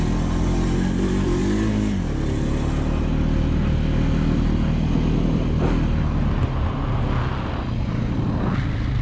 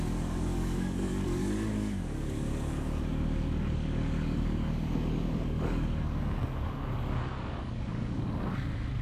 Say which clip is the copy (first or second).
second